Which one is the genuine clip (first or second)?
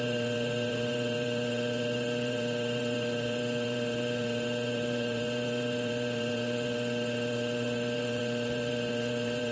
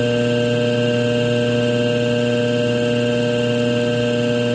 second